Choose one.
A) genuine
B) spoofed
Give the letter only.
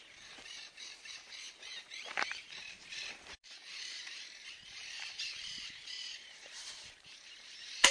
B